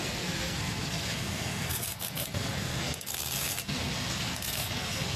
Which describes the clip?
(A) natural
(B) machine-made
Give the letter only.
B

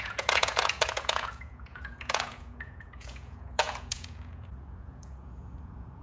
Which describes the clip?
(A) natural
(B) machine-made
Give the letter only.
B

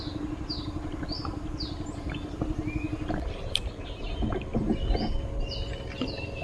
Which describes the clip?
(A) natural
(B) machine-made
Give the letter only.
A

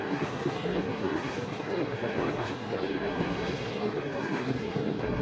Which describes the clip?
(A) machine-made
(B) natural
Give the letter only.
A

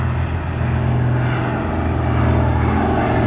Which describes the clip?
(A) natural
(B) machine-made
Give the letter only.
A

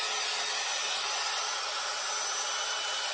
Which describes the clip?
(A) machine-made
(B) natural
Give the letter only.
B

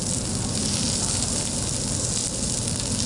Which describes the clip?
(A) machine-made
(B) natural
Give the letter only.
B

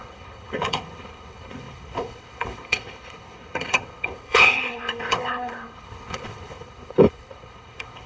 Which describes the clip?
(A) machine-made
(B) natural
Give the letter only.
A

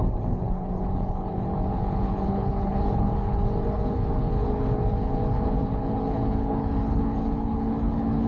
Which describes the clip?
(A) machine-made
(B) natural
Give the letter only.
A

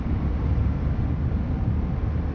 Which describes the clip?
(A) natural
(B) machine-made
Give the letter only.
A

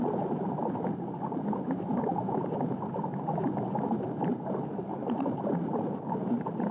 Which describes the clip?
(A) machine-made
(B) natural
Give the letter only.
A